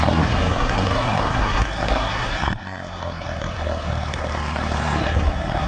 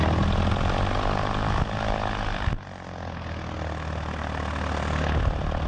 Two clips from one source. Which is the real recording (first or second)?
second